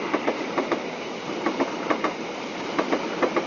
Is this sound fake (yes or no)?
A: no